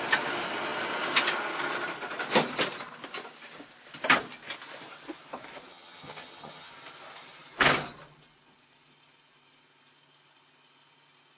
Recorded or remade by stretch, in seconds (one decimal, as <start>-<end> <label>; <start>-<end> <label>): 0.0-5.7 recorded; 5.7-6.7 remade; 6.7-11.4 recorded